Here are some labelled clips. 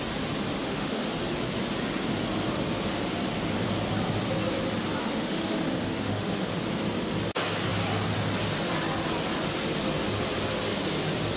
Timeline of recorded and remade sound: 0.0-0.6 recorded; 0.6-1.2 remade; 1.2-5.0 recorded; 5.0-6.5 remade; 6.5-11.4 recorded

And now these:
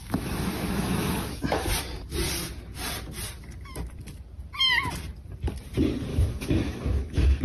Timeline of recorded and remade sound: 0.0-1.7 remade; 1.7-6.1 recorded; 6.1-7.4 remade